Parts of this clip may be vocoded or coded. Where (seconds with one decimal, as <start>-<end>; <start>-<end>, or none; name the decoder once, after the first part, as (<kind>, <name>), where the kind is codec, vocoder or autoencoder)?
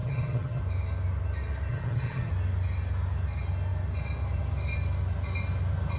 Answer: 0.0-0.6 (vocoder, HiFi-GAN); 1.7-2.3